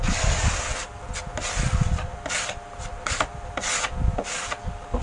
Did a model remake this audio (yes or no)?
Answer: no